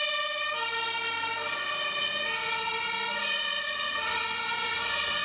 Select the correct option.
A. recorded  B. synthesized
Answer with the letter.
A